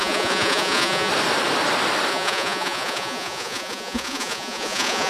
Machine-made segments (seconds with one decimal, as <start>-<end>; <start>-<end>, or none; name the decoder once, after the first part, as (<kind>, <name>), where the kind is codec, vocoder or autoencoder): 0.0-1.1 (vocoder, Vocos); 2.1-5.1